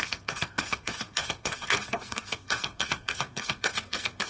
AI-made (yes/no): yes